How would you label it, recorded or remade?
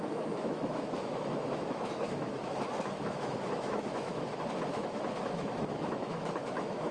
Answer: remade